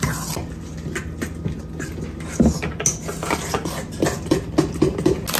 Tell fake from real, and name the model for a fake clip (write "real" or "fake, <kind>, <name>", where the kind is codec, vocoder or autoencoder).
real